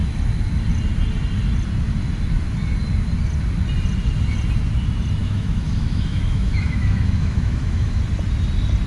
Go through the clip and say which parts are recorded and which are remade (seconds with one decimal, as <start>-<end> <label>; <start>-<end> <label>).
0.0-5.2 recorded; 5.2-8.0 remade; 8.0-8.9 recorded